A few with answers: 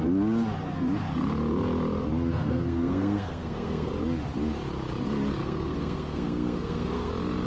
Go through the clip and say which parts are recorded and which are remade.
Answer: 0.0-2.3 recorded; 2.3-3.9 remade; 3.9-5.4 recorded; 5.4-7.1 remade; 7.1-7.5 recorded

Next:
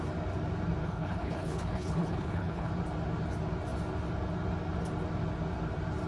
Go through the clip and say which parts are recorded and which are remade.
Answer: 0.0-0.8 recorded; 0.8-2.7 remade; 2.7-6.1 recorded

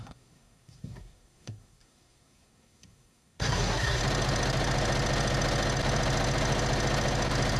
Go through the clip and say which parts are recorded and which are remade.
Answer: 0.0-4.0 remade; 4.0-7.6 recorded

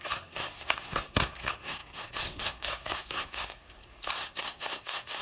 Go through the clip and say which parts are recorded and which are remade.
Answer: 0.0-5.2 remade

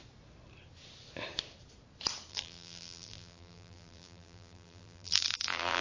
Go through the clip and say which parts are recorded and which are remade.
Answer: 0.0-2.3 recorded; 2.3-5.8 remade